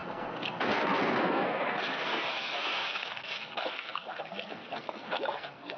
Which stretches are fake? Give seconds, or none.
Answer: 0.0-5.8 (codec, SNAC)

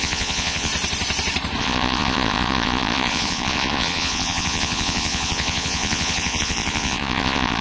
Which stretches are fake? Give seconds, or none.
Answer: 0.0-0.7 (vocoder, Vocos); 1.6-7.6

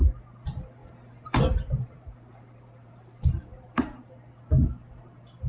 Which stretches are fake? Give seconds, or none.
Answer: 0.8-4.1 (vocoder, BigVGAN v2)

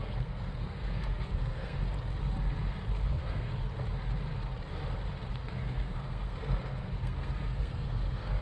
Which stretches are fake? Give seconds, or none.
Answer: 0.0-1.8 (codec, SNAC); 3.1-3.5; 5.3-8.4

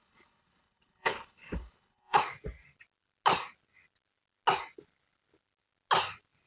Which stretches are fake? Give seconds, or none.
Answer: 0.0-2.2 (codec, HILCodec)

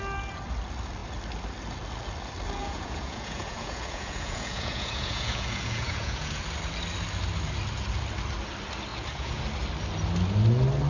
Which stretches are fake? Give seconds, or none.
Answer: 2.6-6.4 (vocoder, Vocos); 8.9-9.4

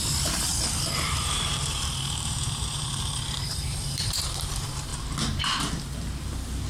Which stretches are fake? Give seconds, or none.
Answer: 0.0-0.5 (vocoder, BigVGAN v2); 1.1-4.9